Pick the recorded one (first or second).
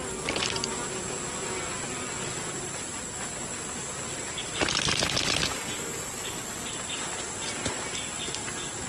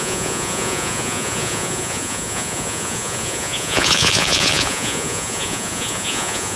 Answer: first